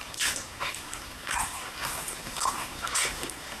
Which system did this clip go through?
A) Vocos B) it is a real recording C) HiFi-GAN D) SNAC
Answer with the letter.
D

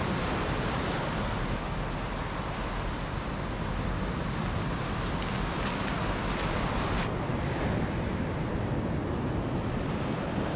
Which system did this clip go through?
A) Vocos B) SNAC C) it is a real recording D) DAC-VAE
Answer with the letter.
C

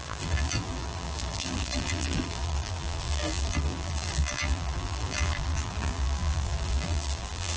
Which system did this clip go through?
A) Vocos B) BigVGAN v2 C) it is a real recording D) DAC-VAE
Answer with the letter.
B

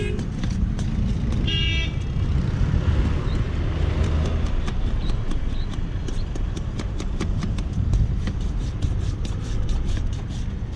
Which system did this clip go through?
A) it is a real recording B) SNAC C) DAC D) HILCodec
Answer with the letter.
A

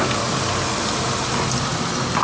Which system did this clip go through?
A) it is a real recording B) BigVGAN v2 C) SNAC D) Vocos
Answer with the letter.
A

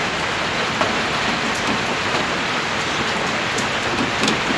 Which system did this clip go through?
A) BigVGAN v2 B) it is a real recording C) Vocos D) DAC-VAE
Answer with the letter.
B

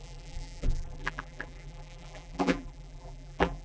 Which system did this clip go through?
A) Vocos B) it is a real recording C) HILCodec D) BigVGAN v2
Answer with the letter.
D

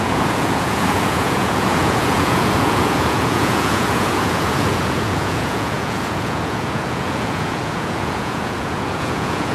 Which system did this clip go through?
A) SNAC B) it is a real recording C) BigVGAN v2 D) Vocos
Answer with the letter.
D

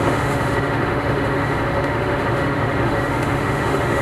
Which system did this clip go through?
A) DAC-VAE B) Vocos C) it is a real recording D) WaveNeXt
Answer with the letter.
A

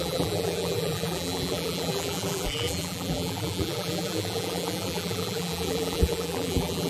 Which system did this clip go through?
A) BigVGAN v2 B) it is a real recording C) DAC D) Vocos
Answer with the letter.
A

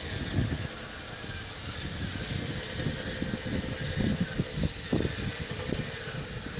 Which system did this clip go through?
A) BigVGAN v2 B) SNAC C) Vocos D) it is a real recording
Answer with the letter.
D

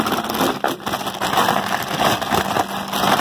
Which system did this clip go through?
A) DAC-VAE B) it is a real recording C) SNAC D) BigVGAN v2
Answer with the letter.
B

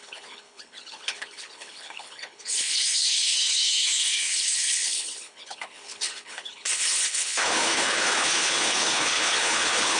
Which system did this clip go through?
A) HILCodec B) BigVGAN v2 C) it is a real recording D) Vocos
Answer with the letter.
A